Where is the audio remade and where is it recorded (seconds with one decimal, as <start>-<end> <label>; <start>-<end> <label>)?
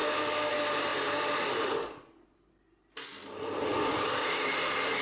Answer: 0.0-0.5 remade; 0.5-5.0 recorded